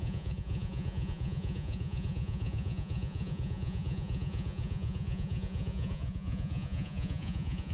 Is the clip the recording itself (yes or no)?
no